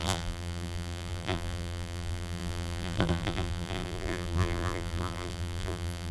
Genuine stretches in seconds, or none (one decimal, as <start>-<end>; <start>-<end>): none